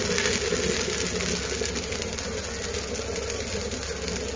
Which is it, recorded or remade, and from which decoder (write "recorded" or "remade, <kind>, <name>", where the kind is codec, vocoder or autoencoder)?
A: recorded